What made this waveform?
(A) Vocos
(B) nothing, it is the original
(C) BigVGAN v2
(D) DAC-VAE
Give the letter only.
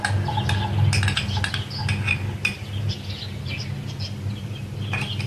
B